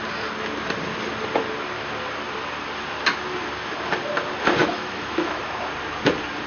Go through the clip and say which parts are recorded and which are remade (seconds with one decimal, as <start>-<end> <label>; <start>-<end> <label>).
0.0-4.6 recorded; 4.6-5.4 remade; 5.4-6.5 recorded